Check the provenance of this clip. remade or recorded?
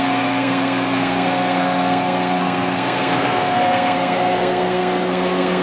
remade